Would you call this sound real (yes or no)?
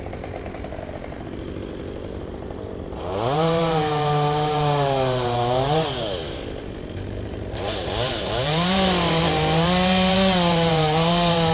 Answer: no